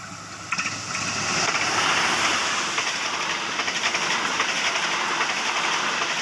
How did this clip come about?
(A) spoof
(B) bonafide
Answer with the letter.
B